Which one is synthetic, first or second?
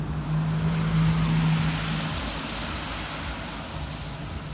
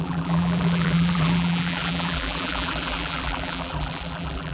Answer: second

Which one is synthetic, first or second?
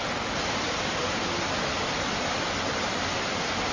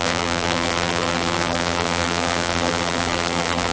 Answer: second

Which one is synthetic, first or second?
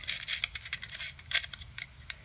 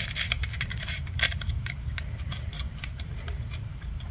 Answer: second